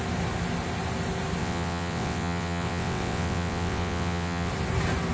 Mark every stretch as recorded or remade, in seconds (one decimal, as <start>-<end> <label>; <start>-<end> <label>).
0.0-1.4 recorded; 1.4-4.5 remade; 4.5-5.1 recorded